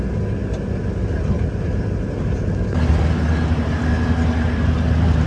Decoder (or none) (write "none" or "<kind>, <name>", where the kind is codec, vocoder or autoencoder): none